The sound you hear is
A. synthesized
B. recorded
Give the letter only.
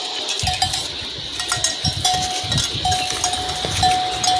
B